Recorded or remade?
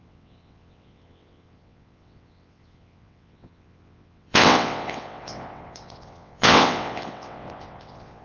remade